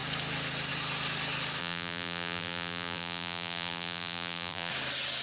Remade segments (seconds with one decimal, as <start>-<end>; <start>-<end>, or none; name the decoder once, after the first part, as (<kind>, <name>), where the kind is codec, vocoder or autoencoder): 1.6-4.7 (vocoder, BigVGAN v2)